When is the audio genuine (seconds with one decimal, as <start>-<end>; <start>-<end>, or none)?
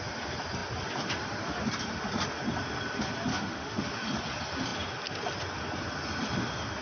0.0-3.3; 3.9-6.8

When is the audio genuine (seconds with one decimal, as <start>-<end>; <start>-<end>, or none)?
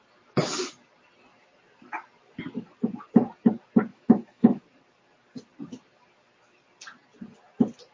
0.0-3.9; 4.6-7.9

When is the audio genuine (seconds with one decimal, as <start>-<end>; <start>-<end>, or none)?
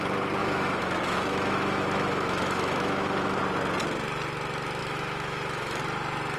0.0-0.4; 3.4-4.8; 5.8-6.4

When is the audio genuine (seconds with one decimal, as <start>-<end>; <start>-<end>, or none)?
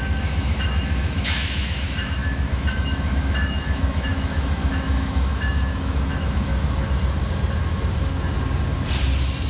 6.5-9.5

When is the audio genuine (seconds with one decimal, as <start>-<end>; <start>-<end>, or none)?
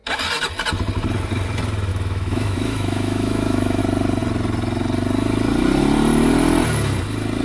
0.0-1.9; 3.8-7.4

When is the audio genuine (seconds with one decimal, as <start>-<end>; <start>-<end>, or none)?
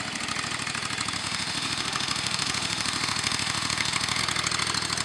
0.0-1.2; 4.2-5.0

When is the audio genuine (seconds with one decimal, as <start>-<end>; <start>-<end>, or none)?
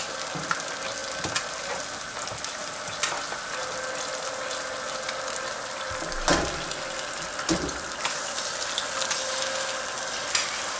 0.0-10.8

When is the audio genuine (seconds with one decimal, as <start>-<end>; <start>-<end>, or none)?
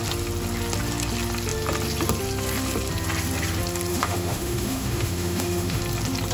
0.0-3.9; 5.8-6.3